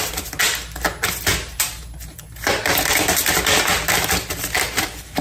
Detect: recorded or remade recorded